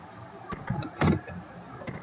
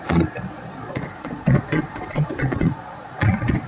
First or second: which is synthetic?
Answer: second